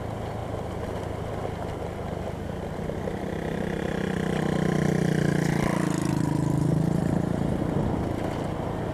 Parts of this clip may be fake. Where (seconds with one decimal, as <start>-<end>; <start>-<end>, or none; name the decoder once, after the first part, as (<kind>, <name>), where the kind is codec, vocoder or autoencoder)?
7.0-7.6 (vocoder, BigVGAN v2)